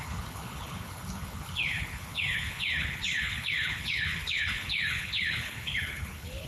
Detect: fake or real fake